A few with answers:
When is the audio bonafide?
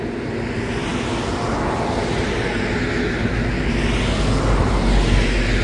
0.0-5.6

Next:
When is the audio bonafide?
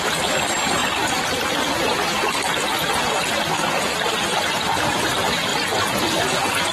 0.0-6.7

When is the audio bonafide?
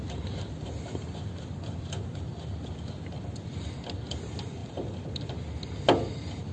0.0-6.5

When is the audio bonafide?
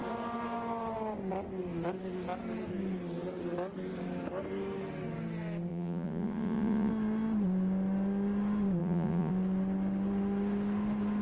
0.0-5.7; 6.9-8.8; 9.3-11.2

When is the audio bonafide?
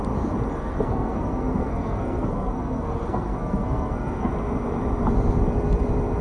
0.0-0.6; 4.3-6.2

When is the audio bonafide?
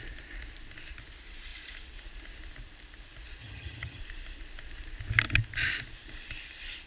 0.0-3.4; 4.0-6.9